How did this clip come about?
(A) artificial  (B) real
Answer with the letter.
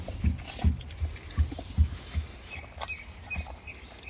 B